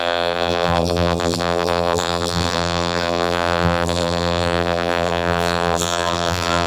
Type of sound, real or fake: fake